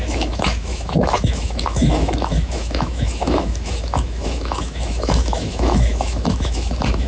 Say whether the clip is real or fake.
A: fake